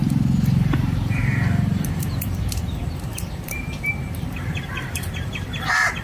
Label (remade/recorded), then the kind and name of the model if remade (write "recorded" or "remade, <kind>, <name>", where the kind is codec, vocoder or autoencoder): remade, vocoder, BigVGAN v2